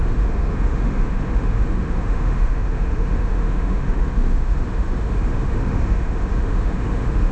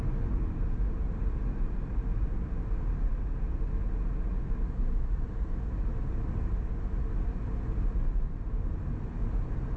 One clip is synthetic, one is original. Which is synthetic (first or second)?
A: first